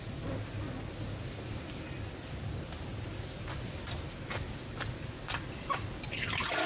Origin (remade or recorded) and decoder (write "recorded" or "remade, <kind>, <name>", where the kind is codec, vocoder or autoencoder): recorded